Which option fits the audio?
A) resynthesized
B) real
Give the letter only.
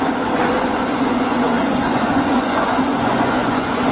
A